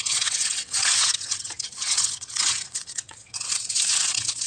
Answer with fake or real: fake